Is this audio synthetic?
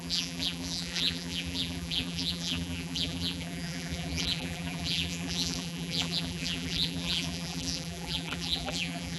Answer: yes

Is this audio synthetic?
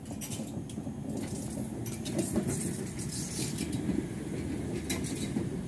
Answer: no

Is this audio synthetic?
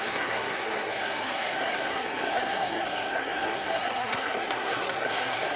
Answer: yes